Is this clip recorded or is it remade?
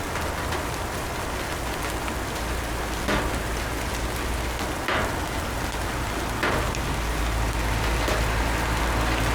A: recorded